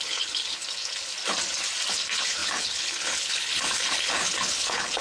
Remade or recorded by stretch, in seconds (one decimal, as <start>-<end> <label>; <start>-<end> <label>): 0.0-1.1 remade; 1.1-1.9 recorded; 1.9-5.0 remade